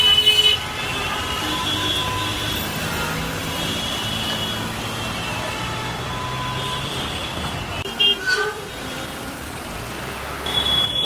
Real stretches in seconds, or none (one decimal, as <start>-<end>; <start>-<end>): 0.0-2.4; 3.6-5.3; 10.4-11.0